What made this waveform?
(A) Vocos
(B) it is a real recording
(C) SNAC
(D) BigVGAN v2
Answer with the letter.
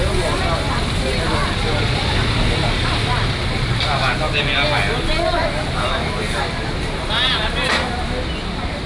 B